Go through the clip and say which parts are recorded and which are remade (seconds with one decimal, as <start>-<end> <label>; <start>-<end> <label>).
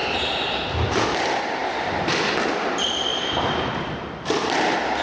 0.0-5.0 recorded